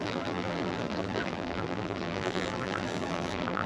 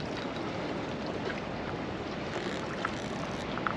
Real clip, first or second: second